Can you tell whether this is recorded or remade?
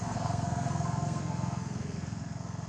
remade